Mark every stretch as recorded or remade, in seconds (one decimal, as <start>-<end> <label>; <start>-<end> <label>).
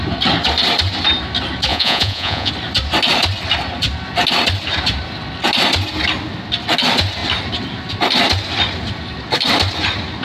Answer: 0.0-1.7 recorded; 1.7-2.5 remade; 2.5-10.2 recorded